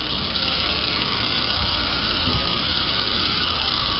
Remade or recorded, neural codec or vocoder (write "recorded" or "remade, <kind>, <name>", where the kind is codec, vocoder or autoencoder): remade, codec, SNAC